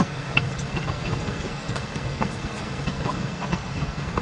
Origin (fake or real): fake